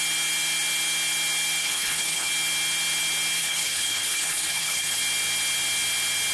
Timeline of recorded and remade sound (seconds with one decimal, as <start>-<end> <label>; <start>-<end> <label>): 0.0-1.6 recorded; 1.6-2.3 remade; 2.3-3.4 recorded; 3.4-5.0 remade; 5.0-6.3 recorded